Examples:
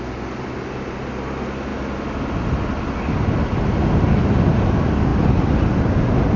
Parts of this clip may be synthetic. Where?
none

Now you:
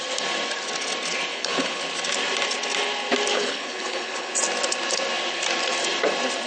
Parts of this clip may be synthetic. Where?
1.3-1.8 (codec, HILCodec); 3.3-4.3

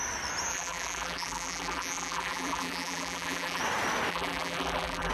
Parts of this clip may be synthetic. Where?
0.5-3.6 (vocoder, BigVGAN v2); 4.1-5.1

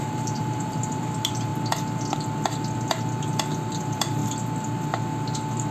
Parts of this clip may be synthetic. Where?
0.0-1.5 (vocoder, BigVGAN v2); 3.8-4.2

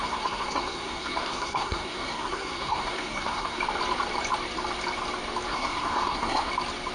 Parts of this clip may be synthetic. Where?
0.0-3.6 (codec, SNAC); 5.5-6.5

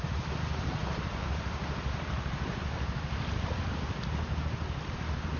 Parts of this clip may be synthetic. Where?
0.8-2.9 (vocoder, BigVGAN v2)

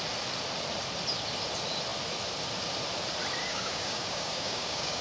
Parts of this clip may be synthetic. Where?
3.4-5.0 (codec, DAC)